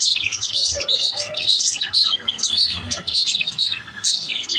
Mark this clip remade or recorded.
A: remade